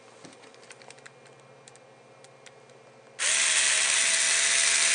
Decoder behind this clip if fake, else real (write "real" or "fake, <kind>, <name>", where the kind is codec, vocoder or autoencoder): real